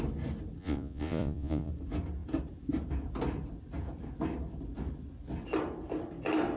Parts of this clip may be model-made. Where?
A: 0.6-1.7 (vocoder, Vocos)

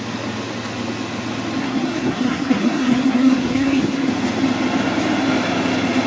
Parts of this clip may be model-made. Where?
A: 1.6-4.1 (codec, SNAC)

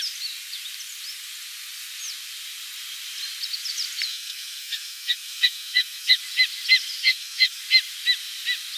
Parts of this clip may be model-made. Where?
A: 4.1-6.2 (codec, SNAC); 7.0-7.6

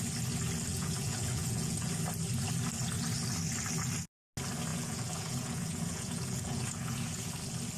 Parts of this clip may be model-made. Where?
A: 0.7-1.9 (vocoder, Vocos); 4.7-7.3

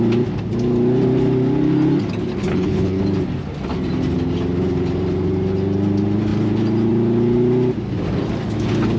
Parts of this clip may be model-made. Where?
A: 2.5-3.0 (codec, HILCodec)

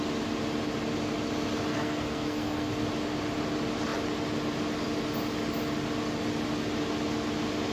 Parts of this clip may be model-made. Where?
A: 1.7-2.7 (codec, SNAC)